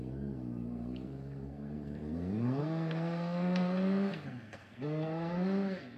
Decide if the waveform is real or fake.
fake